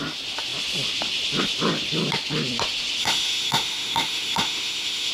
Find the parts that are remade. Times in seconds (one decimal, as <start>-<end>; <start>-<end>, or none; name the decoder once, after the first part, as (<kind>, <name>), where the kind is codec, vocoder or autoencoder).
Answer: 3.0-5.1 (autoencoder, DAC-VAE)